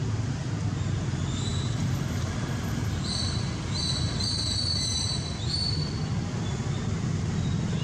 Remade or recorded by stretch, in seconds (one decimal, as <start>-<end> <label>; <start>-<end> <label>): 0.0-7.8 recorded

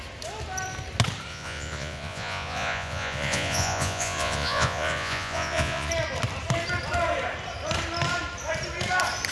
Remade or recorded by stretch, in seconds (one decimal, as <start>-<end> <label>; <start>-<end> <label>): 0.0-1.3 recorded; 1.3-5.9 remade; 5.9-9.3 recorded

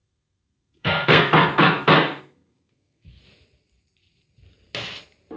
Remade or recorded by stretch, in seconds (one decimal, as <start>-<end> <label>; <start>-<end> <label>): 0.0-3.2 remade; 3.2-5.4 recorded

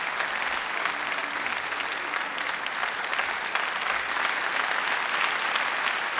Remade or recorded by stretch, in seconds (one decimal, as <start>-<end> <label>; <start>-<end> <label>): 0.0-6.2 recorded

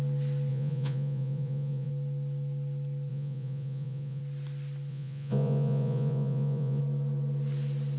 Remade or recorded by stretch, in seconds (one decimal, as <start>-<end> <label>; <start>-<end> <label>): 0.0-0.5 recorded; 0.5-1.9 remade; 1.9-3.1 recorded; 3.1-4.2 remade; 4.2-4.9 recorded; 4.9-6.8 remade; 6.8-8.0 recorded

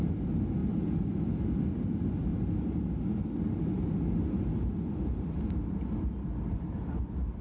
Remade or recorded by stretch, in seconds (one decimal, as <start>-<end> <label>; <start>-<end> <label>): 0.0-7.4 recorded